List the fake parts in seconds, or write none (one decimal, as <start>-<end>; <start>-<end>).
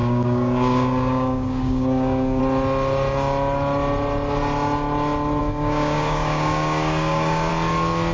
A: 0.0-2.4; 5.4-7.5